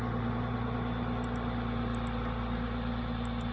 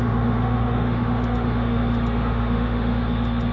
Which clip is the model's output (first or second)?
second